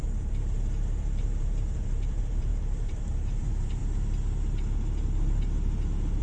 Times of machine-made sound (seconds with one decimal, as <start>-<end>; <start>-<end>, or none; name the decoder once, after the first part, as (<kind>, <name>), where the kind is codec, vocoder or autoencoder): 0.0-3.8 (vocoder, BigVGAN v2)